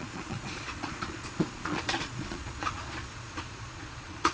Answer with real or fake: fake